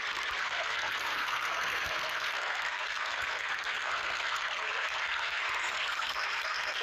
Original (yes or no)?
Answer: no